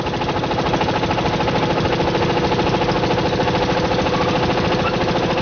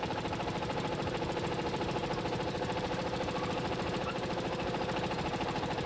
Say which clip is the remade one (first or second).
second